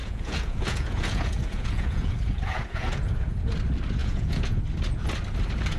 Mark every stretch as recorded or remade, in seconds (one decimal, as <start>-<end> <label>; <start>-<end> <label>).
0.0-3.5 remade; 3.5-4.0 recorded; 4.0-4.6 remade; 4.6-5.8 recorded